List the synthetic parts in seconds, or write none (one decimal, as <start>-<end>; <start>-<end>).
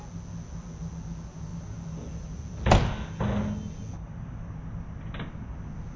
none